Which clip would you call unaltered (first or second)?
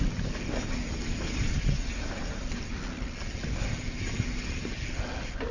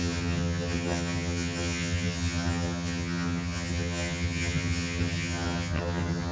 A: first